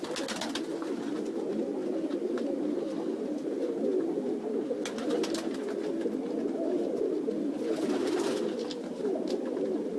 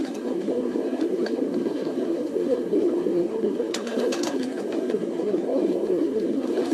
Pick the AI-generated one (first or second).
second